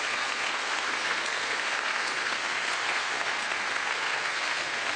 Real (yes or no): no